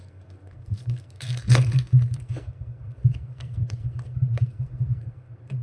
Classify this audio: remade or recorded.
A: remade